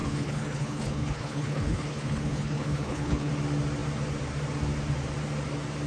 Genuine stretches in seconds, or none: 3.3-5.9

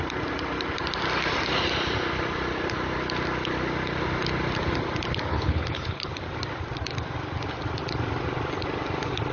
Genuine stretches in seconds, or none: 0.0-5.3; 6.1-9.3

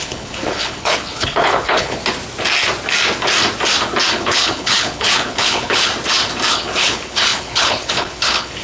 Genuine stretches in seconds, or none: 2.0-4.1; 5.9-6.5

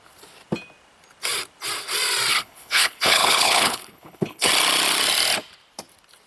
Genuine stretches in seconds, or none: 0.0-2.3; 4.5-6.3